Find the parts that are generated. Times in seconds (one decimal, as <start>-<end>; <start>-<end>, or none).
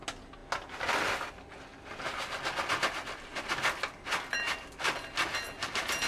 none